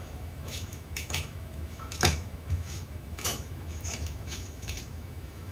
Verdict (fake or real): fake